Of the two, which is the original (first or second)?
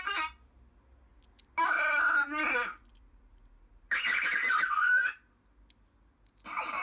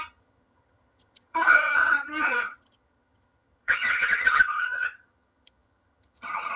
first